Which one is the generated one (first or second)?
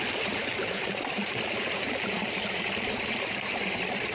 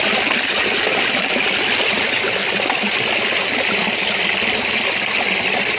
first